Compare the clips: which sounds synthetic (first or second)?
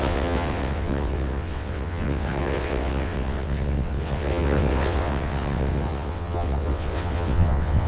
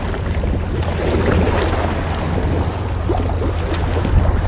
first